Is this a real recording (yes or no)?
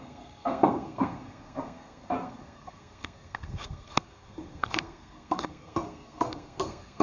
no